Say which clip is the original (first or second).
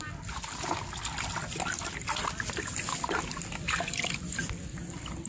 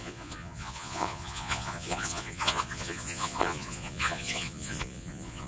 first